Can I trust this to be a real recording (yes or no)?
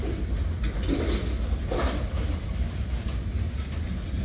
yes